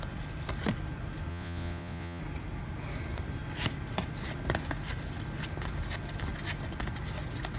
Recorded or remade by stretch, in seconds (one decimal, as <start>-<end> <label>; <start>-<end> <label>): 0.0-1.3 recorded; 1.3-2.2 remade; 2.2-7.6 recorded